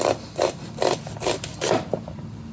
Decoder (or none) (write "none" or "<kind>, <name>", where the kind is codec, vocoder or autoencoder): none